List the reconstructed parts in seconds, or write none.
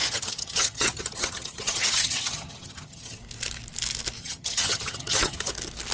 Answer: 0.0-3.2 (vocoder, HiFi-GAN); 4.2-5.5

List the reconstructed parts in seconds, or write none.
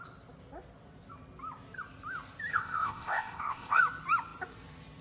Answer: 2.5-3.8 (codec, ZipCodec)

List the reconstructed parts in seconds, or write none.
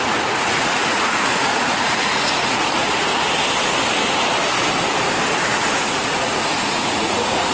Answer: 0.0-3.1 (vocoder, Vocos); 5.7-7.5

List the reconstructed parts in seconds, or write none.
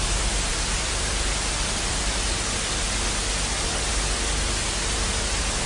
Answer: none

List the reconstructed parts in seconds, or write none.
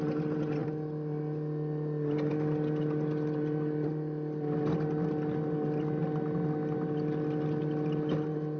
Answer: none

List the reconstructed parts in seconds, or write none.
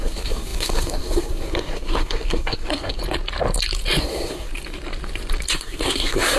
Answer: 0.0-3.0 (codec, SNAC); 4.0-4.5; 5.5-6.4